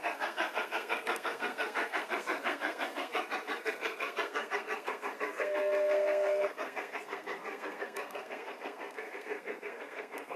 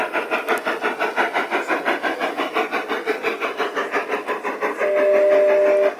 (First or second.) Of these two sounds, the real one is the second